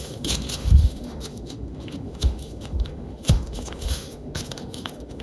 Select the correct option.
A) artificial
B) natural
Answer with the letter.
A